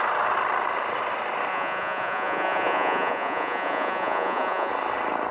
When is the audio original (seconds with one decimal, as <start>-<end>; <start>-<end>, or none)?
0.0-1.5; 4.7-5.3

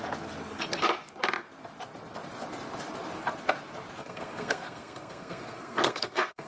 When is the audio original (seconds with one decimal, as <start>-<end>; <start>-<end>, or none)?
0.0-4.0

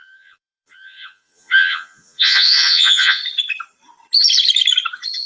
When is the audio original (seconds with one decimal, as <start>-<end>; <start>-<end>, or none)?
3.2-5.3

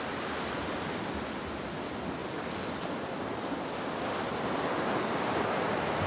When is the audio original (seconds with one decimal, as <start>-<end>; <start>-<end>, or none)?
0.0-6.1

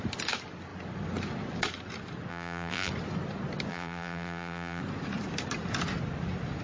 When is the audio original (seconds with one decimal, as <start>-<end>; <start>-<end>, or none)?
0.0-2.3; 2.9-3.7; 4.8-6.6